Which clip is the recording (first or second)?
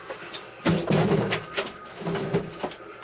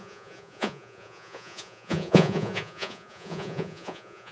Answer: first